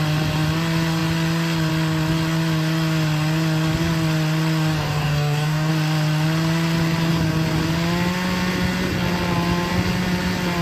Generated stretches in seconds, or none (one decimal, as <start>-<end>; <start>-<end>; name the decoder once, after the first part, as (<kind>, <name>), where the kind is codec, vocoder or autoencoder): 4.7-5.7 (codec, DAC)